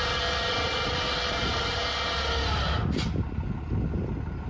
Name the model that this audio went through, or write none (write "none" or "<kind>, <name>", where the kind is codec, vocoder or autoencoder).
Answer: none